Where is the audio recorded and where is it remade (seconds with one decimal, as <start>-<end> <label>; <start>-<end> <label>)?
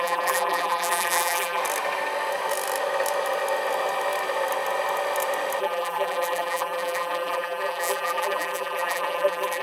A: 0.0-1.6 remade; 1.6-5.6 recorded; 5.6-9.6 remade